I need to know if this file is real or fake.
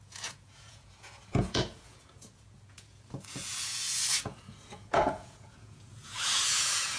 fake